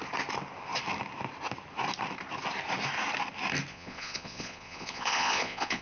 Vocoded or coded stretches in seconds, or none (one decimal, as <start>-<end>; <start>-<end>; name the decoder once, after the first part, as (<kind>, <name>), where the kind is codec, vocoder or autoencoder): 3.7-5.8 (vocoder, Vocos)